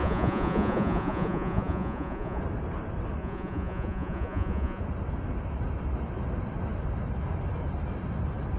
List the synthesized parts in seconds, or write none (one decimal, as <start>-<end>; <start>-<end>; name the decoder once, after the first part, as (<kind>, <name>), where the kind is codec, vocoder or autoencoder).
0.0-2.4 (vocoder, Vocos); 3.2-4.8